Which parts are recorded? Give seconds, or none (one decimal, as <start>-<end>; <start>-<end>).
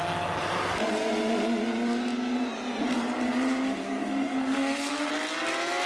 0.0-3.8; 5.1-5.9